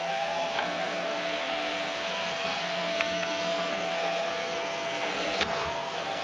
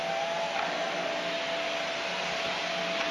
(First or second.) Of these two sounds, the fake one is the first